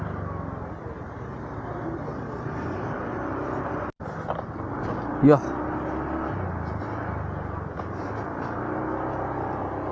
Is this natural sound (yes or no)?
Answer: yes